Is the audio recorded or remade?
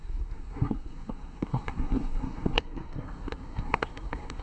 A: remade